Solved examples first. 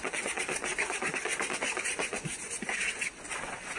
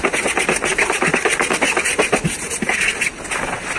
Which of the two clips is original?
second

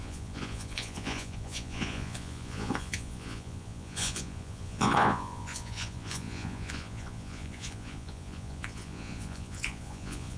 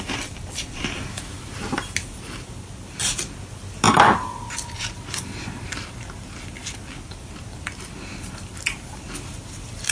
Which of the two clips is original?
second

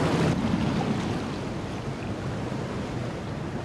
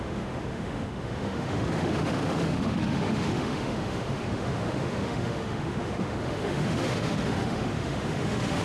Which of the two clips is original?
first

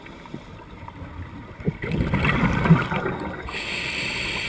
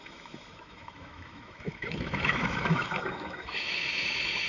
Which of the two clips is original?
first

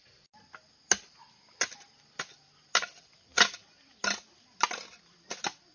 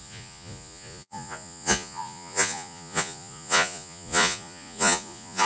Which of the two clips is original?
first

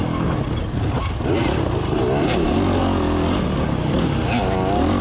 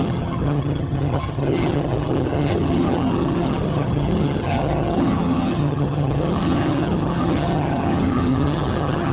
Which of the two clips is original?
first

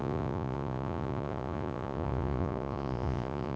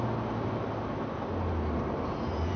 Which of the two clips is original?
second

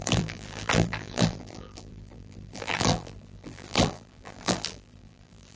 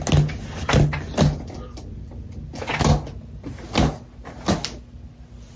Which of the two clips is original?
second